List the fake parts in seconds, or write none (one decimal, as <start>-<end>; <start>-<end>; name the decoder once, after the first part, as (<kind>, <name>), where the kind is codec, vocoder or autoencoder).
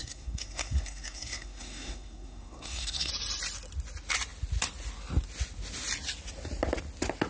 0.0-3.1 (codec, SNAC)